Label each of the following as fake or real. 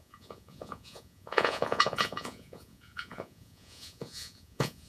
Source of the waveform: fake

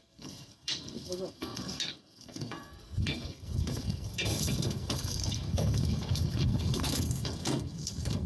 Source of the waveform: fake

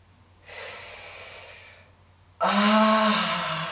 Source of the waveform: real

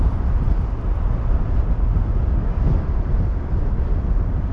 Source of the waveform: real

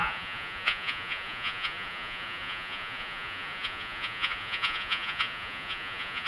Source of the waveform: fake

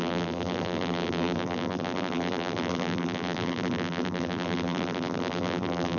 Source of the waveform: fake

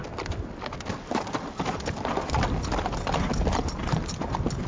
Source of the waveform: real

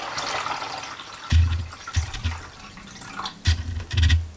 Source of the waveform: real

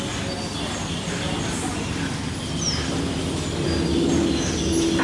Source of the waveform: real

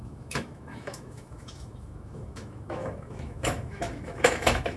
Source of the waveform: fake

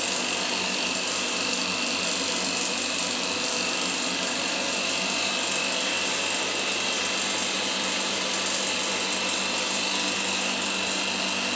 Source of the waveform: real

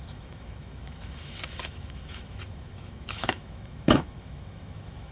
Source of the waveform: fake